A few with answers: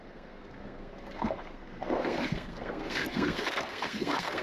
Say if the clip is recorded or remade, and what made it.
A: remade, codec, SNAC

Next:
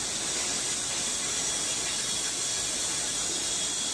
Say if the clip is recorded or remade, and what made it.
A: recorded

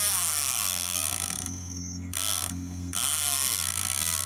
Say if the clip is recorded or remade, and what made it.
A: remade, codec, SNAC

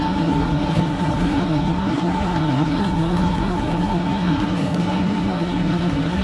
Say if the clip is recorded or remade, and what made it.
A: remade, codec, SNAC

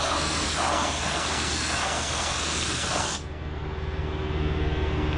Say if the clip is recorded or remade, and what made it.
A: remade, codec, SNAC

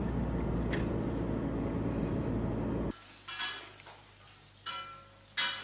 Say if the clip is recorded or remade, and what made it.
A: recorded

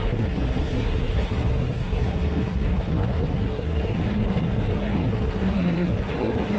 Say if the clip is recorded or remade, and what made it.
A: remade, codec, SNAC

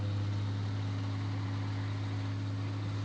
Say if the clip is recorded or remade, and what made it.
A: recorded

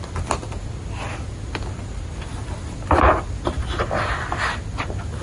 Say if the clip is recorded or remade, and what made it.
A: recorded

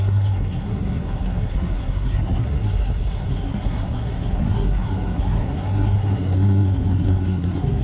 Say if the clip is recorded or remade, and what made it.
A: remade, codec, SNAC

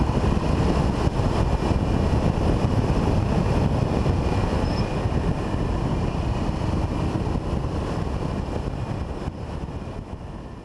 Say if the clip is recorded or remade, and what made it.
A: recorded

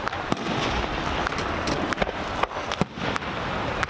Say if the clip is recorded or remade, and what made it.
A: recorded